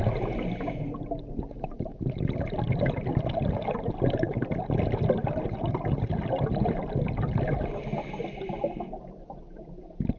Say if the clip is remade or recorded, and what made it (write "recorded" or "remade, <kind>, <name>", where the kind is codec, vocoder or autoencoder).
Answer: recorded